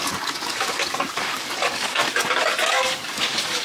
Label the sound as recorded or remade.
remade